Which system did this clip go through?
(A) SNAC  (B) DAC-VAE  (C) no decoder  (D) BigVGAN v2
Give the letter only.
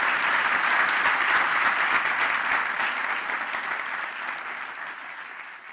C